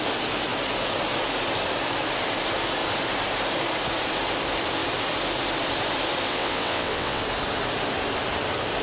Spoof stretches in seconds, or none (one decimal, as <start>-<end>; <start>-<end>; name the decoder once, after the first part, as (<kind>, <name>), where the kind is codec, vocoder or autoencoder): 6.3-7.2 (vocoder, WaveNeXt)